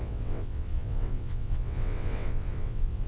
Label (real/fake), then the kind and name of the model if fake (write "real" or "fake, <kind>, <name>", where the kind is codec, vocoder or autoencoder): fake, vocoder, WaveNeXt